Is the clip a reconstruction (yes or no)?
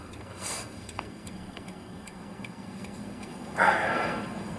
yes